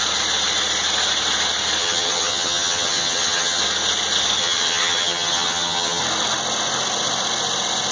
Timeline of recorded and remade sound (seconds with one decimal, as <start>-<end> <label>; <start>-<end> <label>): 0.0-1.8 recorded; 1.8-3.6 remade; 3.6-4.4 recorded; 4.4-6.0 remade; 6.0-7.9 recorded